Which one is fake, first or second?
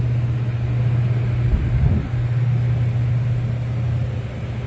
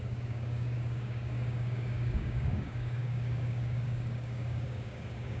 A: second